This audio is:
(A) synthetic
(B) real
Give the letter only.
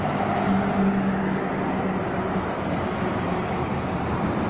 B